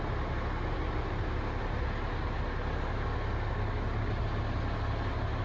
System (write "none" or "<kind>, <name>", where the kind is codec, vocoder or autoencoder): none